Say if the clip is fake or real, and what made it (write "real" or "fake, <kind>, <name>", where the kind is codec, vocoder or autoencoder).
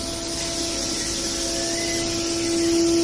real